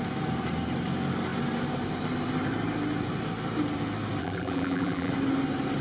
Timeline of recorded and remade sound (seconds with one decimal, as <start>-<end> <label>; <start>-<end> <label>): 0.0-4.2 recorded; 4.2-5.1 remade; 5.1-5.8 recorded